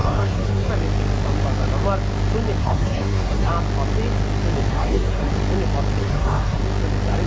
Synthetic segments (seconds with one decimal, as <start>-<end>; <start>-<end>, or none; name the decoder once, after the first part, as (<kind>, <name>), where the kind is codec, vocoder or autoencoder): 0.0-0.7 (codec, SNAC); 2.6-3.5; 4.7-5.3; 6.0-6.6

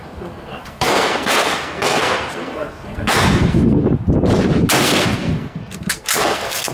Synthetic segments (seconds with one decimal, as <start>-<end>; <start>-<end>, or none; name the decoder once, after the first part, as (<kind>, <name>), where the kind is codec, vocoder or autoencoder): 0.0-3.8 (codec, SNAC); 4.8-6.7

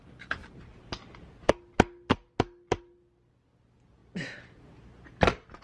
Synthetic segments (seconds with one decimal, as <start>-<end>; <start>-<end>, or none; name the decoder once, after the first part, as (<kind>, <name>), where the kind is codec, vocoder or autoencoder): 0.0-0.4 (vocoder, BigVGAN v2); 2.8-4.0